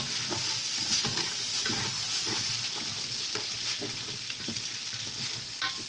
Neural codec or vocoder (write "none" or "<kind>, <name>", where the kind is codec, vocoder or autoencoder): none